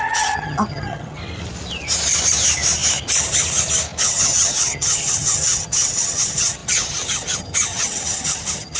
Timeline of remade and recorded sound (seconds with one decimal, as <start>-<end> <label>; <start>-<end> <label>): 0.0-1.2 remade; 1.2-4.0 recorded; 4.0-8.8 remade